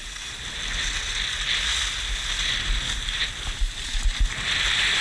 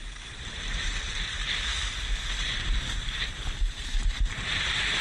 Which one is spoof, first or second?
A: second